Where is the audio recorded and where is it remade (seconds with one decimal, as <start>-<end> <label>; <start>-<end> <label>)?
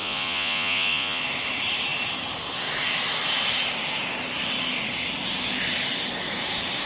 0.0-1.2 remade; 1.2-6.9 recorded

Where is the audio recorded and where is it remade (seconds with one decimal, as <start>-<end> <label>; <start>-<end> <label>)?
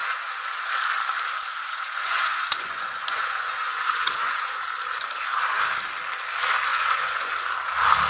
0.0-0.7 remade; 0.7-1.5 recorded; 1.5-4.6 remade; 4.6-6.7 recorded; 6.7-7.3 remade; 7.3-8.1 recorded